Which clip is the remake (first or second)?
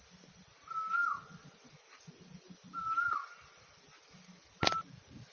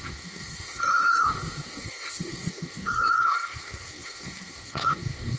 second